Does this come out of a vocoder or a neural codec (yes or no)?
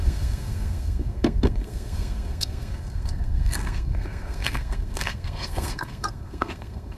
yes